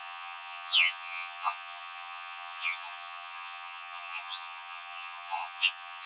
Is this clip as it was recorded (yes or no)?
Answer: no